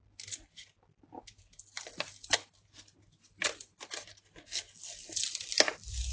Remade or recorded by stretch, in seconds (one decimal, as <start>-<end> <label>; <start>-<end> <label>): 0.0-6.1 recorded